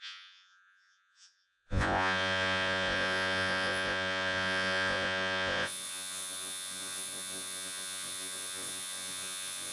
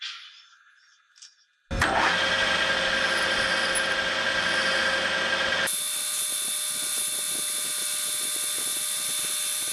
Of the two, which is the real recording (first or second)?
second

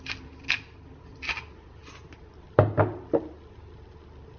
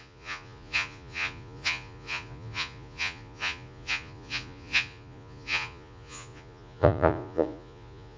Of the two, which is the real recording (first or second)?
first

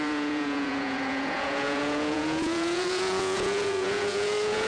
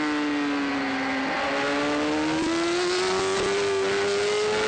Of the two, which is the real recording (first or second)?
second